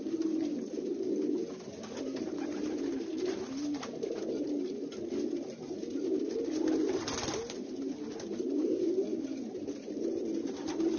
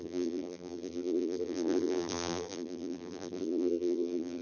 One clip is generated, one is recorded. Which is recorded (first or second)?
first